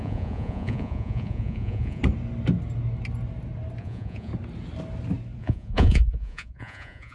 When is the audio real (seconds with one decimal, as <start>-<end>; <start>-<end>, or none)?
2.0-3.8; 4.3-5.4